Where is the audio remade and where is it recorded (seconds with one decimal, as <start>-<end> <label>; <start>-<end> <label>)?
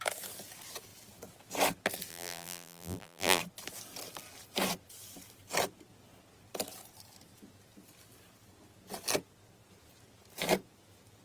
0.0-2.1 recorded; 2.1-3.4 remade; 3.4-11.2 recorded